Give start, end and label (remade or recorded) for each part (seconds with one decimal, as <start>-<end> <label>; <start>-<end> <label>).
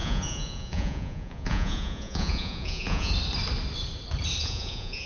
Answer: 0.0-3.1 remade; 3.1-4.4 recorded; 4.4-5.1 remade